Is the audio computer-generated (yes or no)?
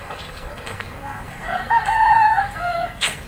yes